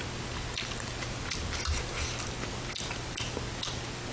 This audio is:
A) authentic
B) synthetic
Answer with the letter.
A